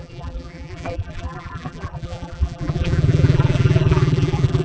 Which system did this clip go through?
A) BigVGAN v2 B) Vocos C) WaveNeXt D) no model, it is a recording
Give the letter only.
A